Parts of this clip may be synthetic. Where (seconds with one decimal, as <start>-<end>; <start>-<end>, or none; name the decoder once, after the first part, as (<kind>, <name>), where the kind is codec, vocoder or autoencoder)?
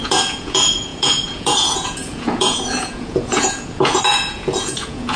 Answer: 0.0-5.2 (vocoder, Vocos)